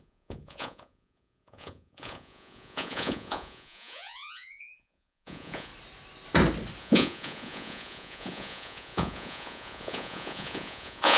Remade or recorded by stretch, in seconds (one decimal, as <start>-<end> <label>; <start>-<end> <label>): 0.0-5.7 remade; 5.7-6.8 recorded; 6.8-11.2 remade